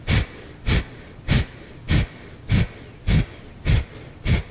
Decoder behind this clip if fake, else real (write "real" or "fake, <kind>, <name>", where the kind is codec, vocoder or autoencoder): real